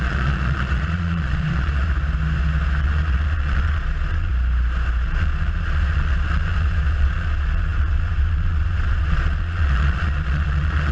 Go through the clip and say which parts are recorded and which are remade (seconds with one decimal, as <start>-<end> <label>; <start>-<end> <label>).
0.0-1.9 remade; 1.9-2.8 recorded; 2.8-4.3 remade; 4.3-5.0 recorded; 5.0-10.9 remade

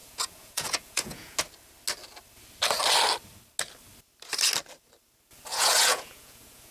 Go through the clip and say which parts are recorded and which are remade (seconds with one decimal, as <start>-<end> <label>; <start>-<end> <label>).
0.0-1.4 remade; 1.4-5.5 recorded; 5.5-6.7 remade

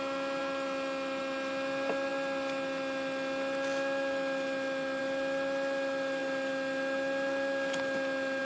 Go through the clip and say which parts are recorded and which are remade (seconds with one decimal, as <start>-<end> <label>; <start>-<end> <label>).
0.0-8.4 recorded

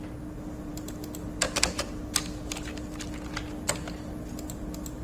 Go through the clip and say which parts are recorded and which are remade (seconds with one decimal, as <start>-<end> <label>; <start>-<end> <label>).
0.0-5.0 recorded